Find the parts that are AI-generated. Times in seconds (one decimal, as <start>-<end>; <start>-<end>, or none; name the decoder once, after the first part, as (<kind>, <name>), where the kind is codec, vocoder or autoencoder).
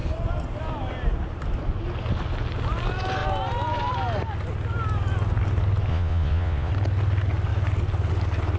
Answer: 5.9-6.7 (vocoder, Vocos)